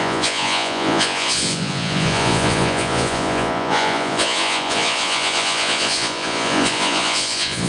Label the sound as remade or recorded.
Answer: remade